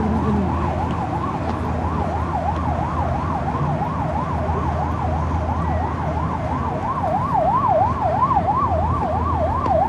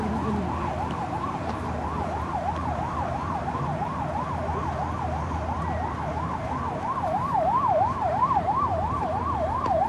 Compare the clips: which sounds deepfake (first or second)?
second